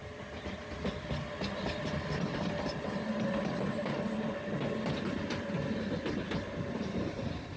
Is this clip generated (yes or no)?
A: no